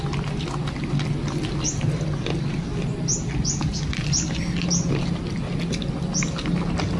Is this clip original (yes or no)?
yes